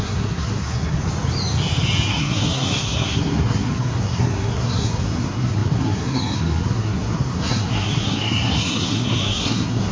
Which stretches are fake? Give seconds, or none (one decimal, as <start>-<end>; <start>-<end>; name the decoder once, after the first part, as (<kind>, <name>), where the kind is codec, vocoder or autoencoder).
0.0-1.0 (codec, SNAC); 2.1-9.9